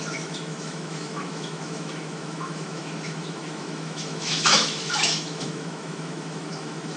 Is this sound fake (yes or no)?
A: yes